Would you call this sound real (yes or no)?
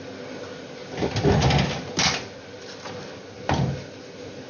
yes